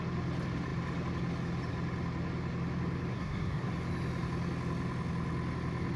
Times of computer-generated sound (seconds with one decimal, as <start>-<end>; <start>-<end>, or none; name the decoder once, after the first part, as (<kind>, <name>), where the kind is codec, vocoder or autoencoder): 3.1-3.7 (codec, SNAC)